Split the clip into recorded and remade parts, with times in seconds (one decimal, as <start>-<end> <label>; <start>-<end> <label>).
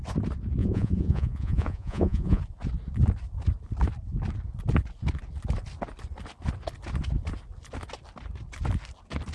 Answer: 0.0-0.6 recorded; 0.6-2.4 remade; 2.4-9.3 recorded